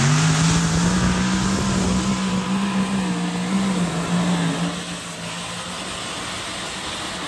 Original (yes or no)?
yes